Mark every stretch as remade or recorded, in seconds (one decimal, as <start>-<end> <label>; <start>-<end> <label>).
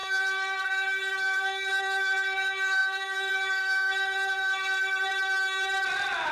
0.0-5.1 remade; 5.1-6.3 recorded